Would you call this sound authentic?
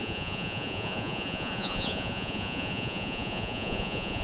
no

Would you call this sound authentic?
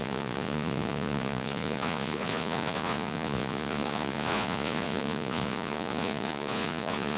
no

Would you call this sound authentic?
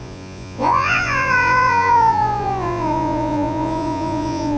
no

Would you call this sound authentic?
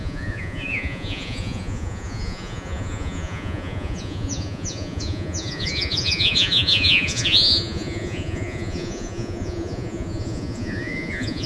no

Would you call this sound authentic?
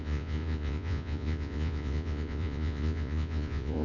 no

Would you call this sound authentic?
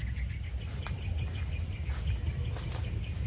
yes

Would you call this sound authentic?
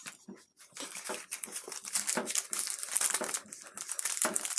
yes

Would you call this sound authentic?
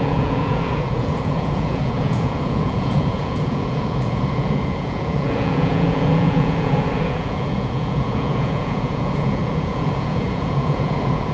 no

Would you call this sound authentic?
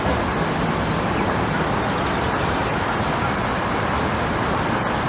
yes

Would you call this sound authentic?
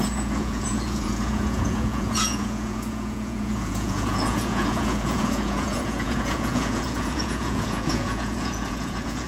no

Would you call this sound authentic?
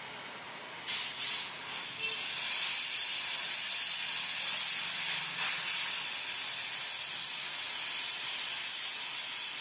yes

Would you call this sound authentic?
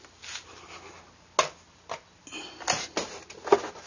yes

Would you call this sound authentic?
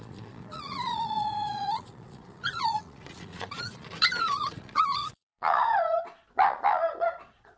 no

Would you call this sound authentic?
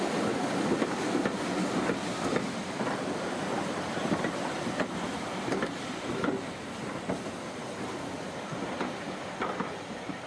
yes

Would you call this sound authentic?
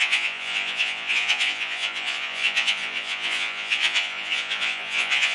no